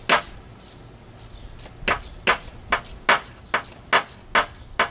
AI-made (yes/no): no